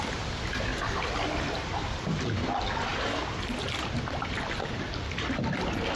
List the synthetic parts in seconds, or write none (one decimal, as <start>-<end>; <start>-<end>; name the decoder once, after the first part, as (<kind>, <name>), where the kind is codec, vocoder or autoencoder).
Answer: none